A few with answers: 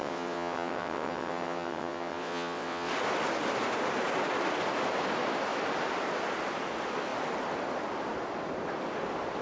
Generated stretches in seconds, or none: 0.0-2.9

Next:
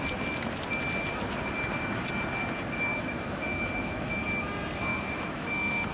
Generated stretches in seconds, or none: 2.9-4.2; 4.9-5.9

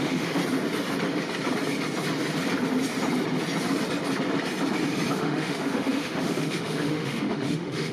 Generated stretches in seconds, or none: 0.0-0.4; 5.1-7.9

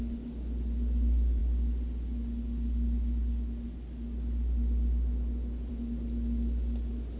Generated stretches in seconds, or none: none